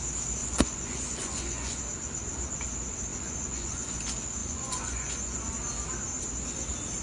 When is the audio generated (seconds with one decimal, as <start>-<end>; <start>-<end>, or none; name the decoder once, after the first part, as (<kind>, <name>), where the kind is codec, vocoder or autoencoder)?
0.4-1.8 (vocoder, Vocos); 3.1-4.0; 4.4-5.5